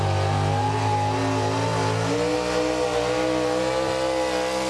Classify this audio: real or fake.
real